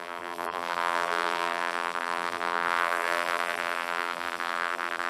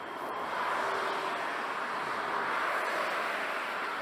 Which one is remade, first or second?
first